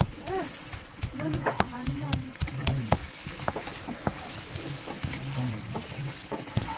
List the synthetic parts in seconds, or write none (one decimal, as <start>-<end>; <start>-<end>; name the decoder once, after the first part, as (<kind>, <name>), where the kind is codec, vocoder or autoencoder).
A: 0.0-3.0 (vocoder, WaveNeXt); 5.5-6.8

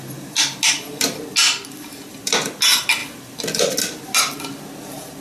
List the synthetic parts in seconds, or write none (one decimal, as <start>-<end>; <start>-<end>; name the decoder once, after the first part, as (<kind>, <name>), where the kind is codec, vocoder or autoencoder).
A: none

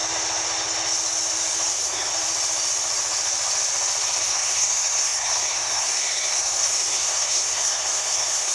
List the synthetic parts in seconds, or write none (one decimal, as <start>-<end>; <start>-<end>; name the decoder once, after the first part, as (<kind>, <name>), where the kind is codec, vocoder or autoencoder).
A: 1.7-2.1 (codec, SNAC); 4.2-8.5

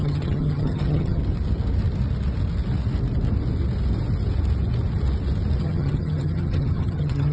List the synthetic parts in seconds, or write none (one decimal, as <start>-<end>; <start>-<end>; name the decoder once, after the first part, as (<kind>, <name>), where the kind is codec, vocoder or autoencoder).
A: 0.0-1.2 (vocoder, HiFi-GAN); 5.6-7.3